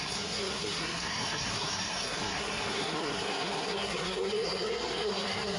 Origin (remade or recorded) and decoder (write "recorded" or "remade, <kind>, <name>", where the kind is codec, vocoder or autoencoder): remade, codec, SNAC